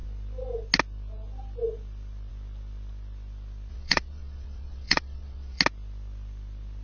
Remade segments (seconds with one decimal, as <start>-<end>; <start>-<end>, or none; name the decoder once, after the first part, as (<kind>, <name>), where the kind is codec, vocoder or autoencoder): 3.7-5.6 (vocoder, WaveNeXt)